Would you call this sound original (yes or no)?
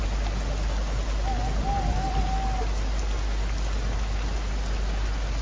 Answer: yes